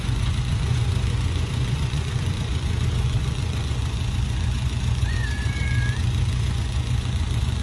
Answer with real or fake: fake